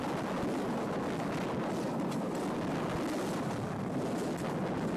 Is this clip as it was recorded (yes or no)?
yes